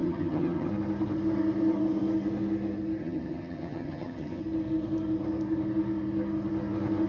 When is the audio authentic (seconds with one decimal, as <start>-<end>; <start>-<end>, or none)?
0.7-3.0; 4.4-7.1